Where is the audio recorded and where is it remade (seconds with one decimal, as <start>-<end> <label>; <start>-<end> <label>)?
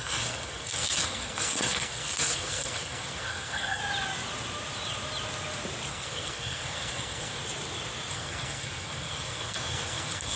0.0-3.8 remade; 3.8-5.9 recorded; 5.9-7.4 remade; 7.4-8.1 recorded; 8.1-10.4 remade